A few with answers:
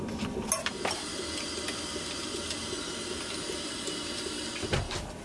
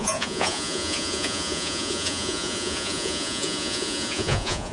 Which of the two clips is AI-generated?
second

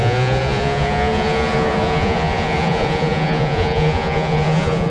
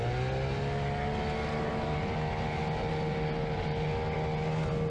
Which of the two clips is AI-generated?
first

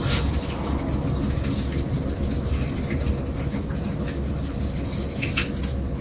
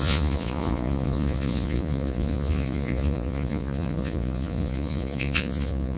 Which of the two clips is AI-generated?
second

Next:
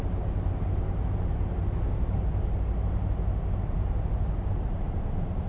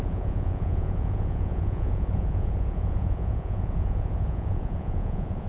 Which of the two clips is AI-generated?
second